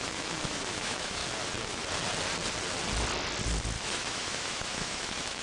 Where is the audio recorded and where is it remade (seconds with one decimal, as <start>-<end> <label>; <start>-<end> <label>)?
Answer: 0.0-1.2 remade; 1.2-3.8 recorded; 3.8-5.4 remade